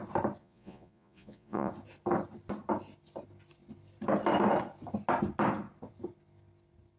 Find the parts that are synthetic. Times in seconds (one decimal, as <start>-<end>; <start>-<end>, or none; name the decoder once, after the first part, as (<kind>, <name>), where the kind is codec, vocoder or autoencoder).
0.4-1.7 (vocoder, Vocos)